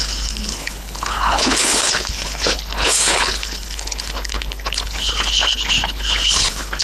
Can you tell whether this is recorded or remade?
remade